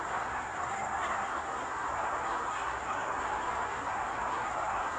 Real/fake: fake